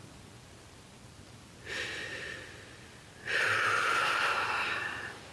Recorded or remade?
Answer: recorded